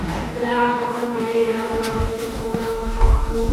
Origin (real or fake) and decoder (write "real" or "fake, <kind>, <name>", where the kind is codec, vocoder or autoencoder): fake, codec, DAC